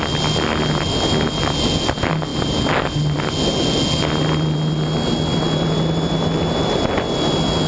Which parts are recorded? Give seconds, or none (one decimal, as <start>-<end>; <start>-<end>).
0.0-7.7